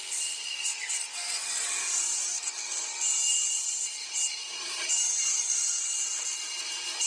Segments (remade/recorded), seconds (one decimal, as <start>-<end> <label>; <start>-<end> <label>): 0.0-3.3 recorded; 3.3-4.9 remade; 4.9-5.4 recorded; 5.4-6.0 remade; 6.0-7.1 recorded